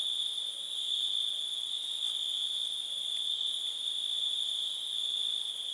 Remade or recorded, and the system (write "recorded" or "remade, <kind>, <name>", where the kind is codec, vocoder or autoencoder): recorded